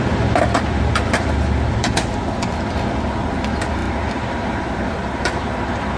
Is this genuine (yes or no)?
no